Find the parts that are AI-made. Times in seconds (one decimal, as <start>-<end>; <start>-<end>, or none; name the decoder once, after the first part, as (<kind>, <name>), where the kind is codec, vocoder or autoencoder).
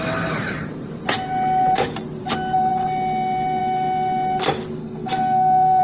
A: 4.8-5.8 (codec, SNAC)